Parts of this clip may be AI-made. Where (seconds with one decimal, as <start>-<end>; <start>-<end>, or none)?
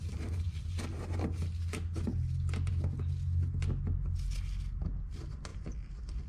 none